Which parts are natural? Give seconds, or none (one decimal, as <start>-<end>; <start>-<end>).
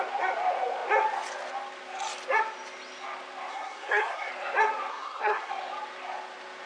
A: 0.0-3.5; 4.3-4.9; 5.5-6.7